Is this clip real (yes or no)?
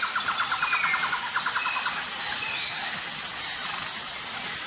yes